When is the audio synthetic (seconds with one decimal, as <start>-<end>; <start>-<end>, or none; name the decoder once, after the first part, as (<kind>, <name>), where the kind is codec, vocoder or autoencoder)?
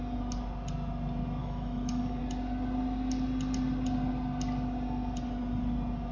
1.4-2.2 (autoencoder, DAC-VAE)